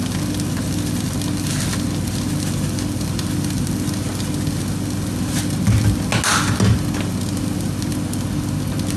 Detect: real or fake real